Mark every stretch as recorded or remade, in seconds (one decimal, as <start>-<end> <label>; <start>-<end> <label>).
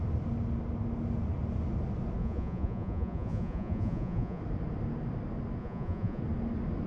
0.0-2.2 recorded; 2.2-4.4 remade; 4.4-5.6 recorded; 5.6-6.2 remade; 6.2-6.9 recorded